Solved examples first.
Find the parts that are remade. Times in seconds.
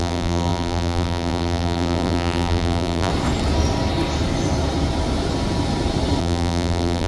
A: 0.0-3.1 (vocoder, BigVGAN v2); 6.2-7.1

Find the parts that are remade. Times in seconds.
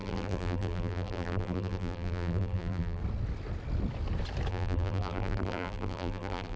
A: 0.0-3.0 (vocoder, BigVGAN v2); 4.5-6.6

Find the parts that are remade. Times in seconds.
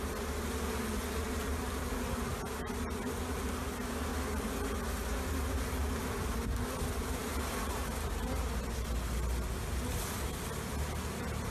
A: 7.2-8.9 (vocoder, BigVGAN v2)